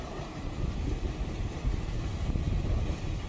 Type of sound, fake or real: real